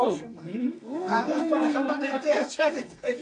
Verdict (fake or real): fake